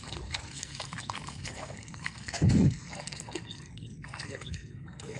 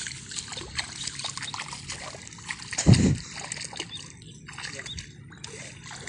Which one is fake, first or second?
first